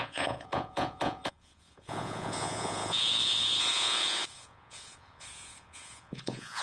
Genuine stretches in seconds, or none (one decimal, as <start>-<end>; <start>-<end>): none